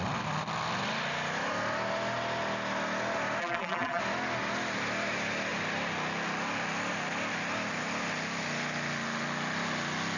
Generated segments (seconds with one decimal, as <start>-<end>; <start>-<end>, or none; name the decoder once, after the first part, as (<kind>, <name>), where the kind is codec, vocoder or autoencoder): 3.4-4.0 (vocoder, BigVGAN v2)